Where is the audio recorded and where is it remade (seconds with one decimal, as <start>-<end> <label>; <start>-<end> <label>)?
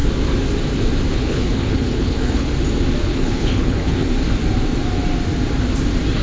0.0-1.1 recorded; 1.1-2.5 remade; 2.5-3.1 recorded; 3.1-4.1 remade; 4.1-6.2 recorded